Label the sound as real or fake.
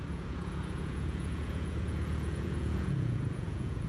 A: fake